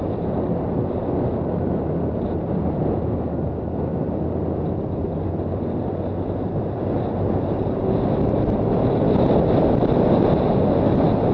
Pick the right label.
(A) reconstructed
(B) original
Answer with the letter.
B